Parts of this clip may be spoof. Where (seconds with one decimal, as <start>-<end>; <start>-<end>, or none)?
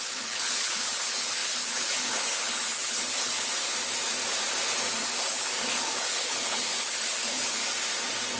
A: 0.0-3.5; 5.2-7.6